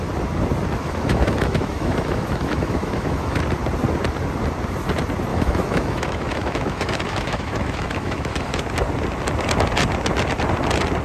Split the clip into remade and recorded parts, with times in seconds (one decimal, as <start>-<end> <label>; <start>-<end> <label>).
0.0-0.8 recorded; 0.8-3.4 remade; 3.4-5.3 recorded; 5.3-8.6 remade; 8.6-11.0 recorded

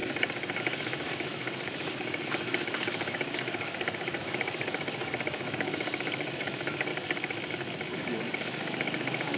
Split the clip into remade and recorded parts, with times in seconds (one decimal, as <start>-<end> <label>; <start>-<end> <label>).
0.0-0.6 recorded; 0.6-6.9 remade; 6.9-7.5 recorded; 7.5-9.4 remade

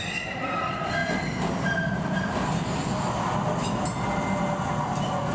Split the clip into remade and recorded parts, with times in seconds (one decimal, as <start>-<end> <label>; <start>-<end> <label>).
0.0-5.3 recorded